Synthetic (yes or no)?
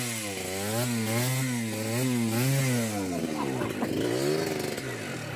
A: no